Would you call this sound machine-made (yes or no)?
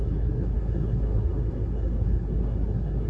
yes